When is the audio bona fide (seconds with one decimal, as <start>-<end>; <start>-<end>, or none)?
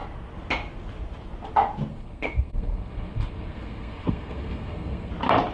0.0-1.9; 5.1-5.5